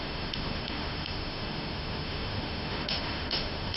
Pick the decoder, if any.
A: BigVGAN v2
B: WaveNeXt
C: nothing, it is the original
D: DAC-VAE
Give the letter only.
D